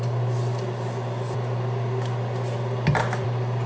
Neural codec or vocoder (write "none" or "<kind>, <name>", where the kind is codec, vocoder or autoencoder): none